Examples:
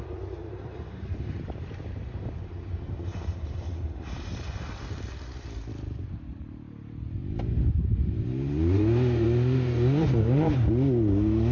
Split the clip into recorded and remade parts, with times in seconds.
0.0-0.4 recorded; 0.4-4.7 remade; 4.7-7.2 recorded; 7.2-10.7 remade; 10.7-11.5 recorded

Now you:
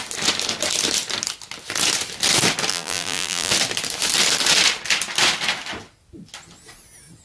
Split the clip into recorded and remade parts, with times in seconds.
0.0-2.7 recorded; 2.7-3.5 remade; 3.5-7.2 recorded